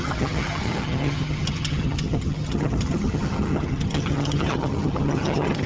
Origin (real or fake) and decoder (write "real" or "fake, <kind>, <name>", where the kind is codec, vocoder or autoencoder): fake, vocoder, HiFi-GAN